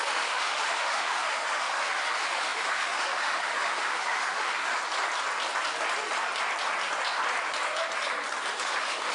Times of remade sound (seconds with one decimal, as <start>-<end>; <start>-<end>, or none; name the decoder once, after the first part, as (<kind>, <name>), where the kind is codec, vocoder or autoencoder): 0.0-4.7 (autoencoder, DAC-VAE); 8.6-9.1